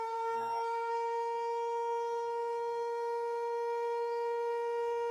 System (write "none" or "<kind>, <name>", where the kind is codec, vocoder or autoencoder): codec, SNAC